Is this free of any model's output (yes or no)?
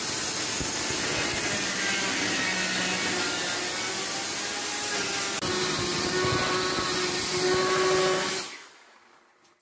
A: yes